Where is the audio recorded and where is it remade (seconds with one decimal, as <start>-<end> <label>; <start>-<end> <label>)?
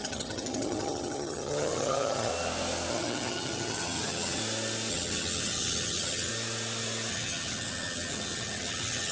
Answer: 0.0-2.3 remade; 2.3-2.9 recorded; 2.9-4.4 remade; 4.4-4.9 recorded; 4.9-6.3 remade; 6.3-7.1 recorded; 7.1-9.1 remade